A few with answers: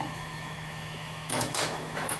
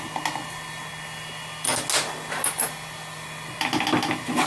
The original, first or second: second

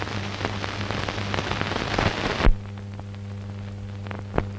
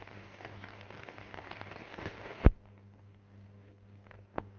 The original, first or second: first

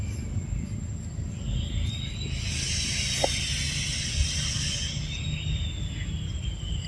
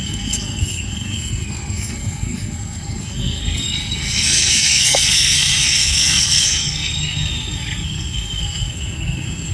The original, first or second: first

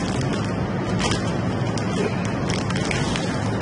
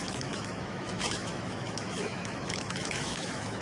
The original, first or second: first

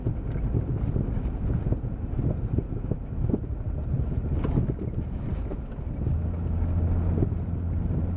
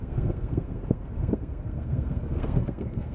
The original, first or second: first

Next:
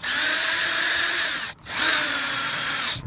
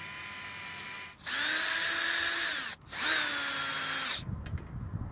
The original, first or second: second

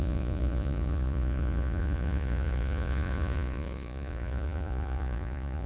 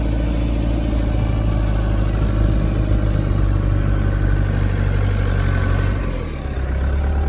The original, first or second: second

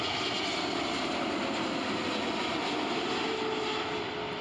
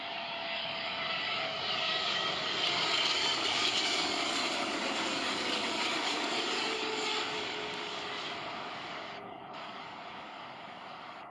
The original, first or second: first